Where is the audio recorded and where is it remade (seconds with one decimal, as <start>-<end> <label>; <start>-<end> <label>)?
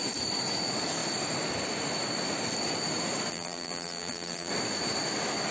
0.0-3.3 recorded; 3.3-4.5 remade; 4.5-5.5 recorded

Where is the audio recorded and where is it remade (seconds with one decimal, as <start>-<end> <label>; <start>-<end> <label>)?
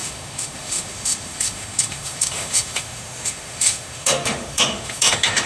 0.0-5.5 remade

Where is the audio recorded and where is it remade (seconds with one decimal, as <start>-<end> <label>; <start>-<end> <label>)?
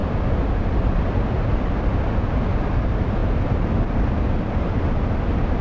0.0-5.6 recorded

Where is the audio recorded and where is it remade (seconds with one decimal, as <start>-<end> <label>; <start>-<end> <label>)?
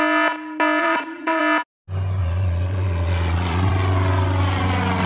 0.0-0.8 recorded; 0.8-1.4 remade; 1.4-2.2 recorded; 2.2-3.7 remade; 3.7-5.1 recorded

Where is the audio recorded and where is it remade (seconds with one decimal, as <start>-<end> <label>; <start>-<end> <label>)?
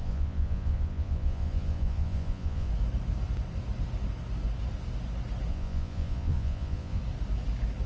0.0-2.7 remade; 2.7-5.5 recorded; 5.5-7.0 remade; 7.0-7.9 recorded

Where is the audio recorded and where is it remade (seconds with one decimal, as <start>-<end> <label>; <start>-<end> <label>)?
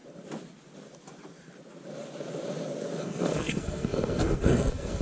0.0-3.0 recorded; 3.0-5.0 remade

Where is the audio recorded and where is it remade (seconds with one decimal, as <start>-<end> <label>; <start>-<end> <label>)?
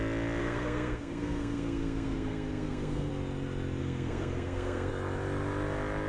0.0-0.4 recorded; 0.4-3.1 remade; 3.1-3.8 recorded; 3.8-4.9 remade; 4.9-6.1 recorded